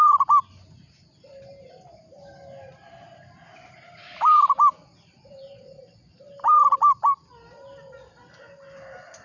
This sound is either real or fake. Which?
real